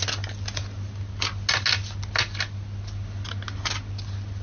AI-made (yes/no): no